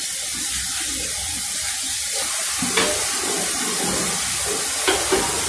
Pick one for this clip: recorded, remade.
recorded